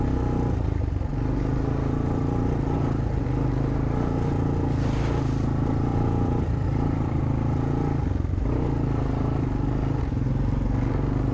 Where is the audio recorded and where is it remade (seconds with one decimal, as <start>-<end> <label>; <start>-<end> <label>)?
0.0-5.9 recorded; 5.9-7.2 remade; 7.2-11.3 recorded